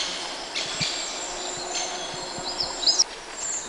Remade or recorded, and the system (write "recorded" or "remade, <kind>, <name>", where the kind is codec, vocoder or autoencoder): recorded